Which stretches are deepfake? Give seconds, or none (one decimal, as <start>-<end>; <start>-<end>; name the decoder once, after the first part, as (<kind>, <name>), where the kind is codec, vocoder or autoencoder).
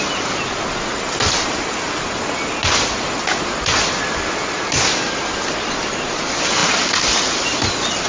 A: none